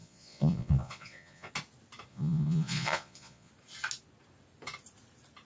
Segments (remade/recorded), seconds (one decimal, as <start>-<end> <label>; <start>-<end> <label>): 0.0-1.5 remade; 1.5-2.1 recorded; 2.1-3.5 remade; 3.5-5.4 recorded